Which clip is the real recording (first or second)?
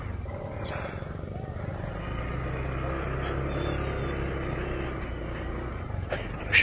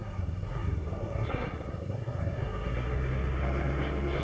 first